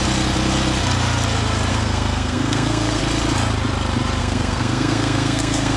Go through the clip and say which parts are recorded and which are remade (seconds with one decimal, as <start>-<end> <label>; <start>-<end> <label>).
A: 0.0-1.7 recorded; 1.7-3.0 remade; 3.0-4.2 recorded; 4.2-5.8 remade